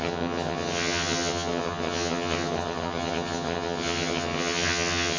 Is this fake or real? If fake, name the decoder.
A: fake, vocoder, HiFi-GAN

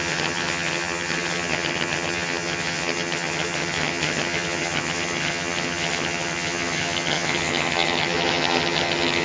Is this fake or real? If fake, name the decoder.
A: fake, vocoder, HiFi-GAN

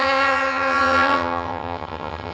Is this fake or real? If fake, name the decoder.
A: fake, vocoder, HiFi-GAN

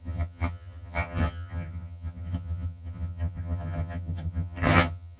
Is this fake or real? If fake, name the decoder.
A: fake, vocoder, HiFi-GAN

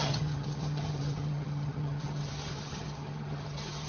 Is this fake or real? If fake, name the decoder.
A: fake, vocoder, HiFi-GAN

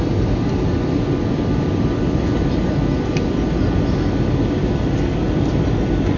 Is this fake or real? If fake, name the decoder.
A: real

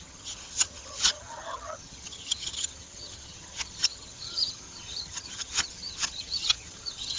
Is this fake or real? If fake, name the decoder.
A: fake, vocoder, HiFi-GAN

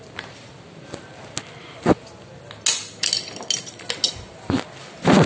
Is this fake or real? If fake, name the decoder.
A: real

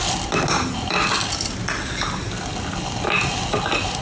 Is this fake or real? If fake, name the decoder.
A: real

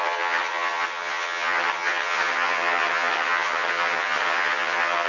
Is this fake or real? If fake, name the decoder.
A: fake, vocoder, HiFi-GAN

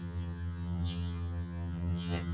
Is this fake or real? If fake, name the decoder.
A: fake, vocoder, HiFi-GAN